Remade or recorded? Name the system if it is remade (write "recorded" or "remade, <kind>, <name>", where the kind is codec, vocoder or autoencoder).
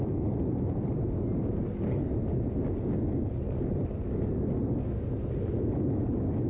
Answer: recorded